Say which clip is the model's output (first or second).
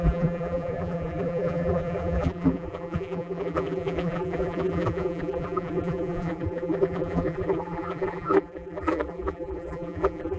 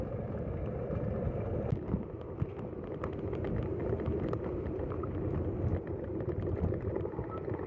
first